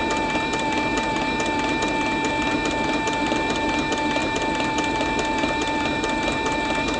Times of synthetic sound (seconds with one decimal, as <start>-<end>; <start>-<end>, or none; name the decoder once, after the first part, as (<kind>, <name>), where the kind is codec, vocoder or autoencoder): none